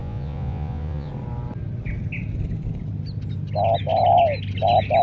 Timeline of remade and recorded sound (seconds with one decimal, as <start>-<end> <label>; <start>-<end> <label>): 0.0-1.1 remade; 1.1-5.0 recorded